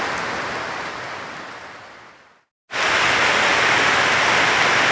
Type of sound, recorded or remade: recorded